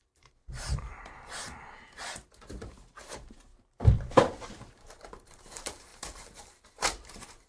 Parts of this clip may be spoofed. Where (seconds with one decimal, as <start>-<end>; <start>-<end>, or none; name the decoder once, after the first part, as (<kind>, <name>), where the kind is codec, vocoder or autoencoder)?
0.0-3.5 (vocoder, BigVGAN v2); 4.0-7.5